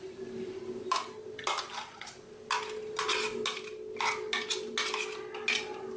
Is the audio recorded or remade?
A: recorded